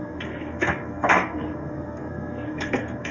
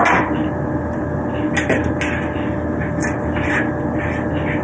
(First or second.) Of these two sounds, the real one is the second